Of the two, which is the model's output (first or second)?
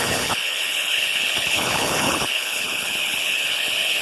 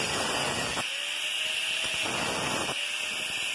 first